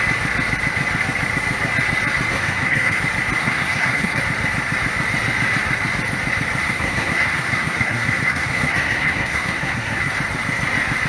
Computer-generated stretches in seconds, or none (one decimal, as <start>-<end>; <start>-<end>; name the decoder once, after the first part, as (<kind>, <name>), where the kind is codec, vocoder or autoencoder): 2.3-3.0 (codec, SNAC); 3.4-4.2; 6.6-10.1